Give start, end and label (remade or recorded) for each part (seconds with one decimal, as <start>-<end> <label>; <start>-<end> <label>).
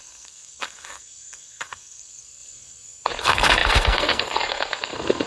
0.0-5.3 remade